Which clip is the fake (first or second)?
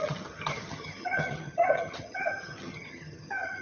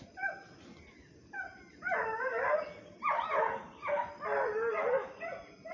first